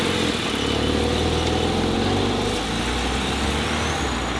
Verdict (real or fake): real